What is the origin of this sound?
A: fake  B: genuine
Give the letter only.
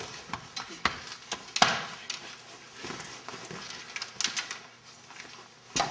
B